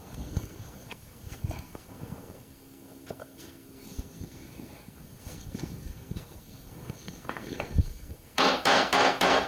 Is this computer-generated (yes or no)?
yes